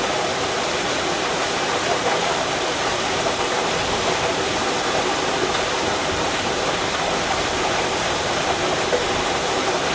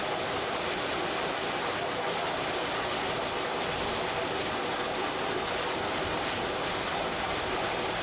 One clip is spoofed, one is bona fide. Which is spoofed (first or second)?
first